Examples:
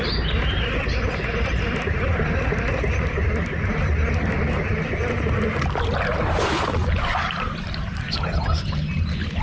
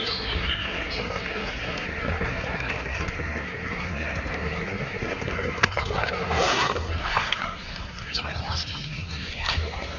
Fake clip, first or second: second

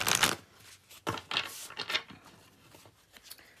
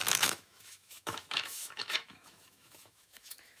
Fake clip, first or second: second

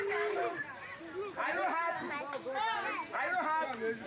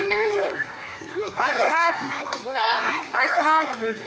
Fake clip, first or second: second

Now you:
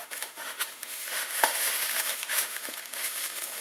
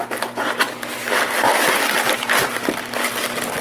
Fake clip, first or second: first